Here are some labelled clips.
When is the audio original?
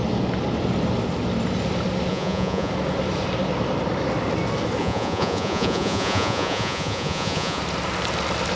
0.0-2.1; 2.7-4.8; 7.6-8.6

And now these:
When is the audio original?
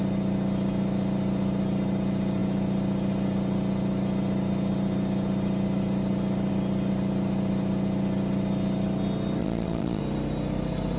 0.0-9.4; 10.0-11.0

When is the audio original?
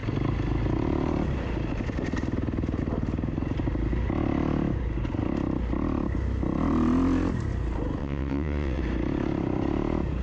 0.0-8.0; 8.8-10.2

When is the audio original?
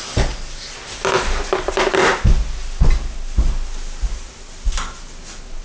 0.0-5.6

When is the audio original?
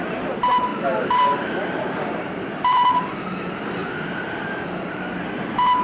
0.0-0.7; 3.0-5.8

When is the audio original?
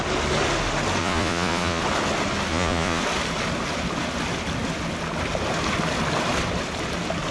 0.0-1.0; 1.8-2.5; 3.0-7.3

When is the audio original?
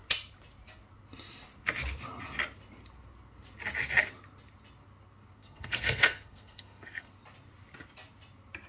0.0-5.4; 7.1-8.7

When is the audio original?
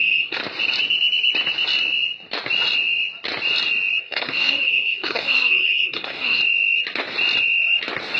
0.4-4.0; 6.4-8.2